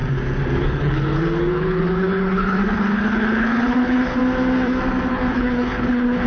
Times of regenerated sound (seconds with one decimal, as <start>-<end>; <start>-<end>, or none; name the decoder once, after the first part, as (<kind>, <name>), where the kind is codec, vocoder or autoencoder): 0.6-4.2 (codec, HILCodec); 5.1-6.3